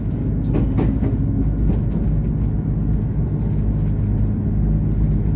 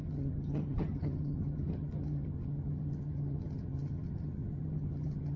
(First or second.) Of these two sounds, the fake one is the second